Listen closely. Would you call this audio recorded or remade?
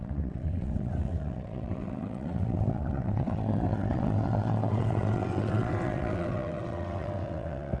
remade